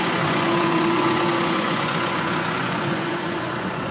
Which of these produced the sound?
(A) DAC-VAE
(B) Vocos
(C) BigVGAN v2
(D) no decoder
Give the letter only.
B